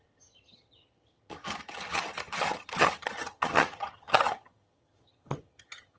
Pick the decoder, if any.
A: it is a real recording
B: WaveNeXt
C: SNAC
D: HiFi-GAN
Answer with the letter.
D